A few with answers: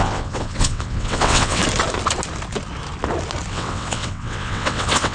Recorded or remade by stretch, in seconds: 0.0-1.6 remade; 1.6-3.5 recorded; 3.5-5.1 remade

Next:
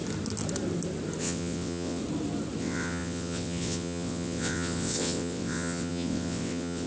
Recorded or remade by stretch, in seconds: 0.0-1.2 recorded; 1.2-2.0 remade; 2.0-2.6 recorded; 2.6-6.9 remade